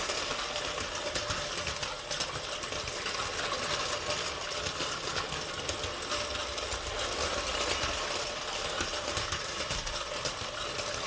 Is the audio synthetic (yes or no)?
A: no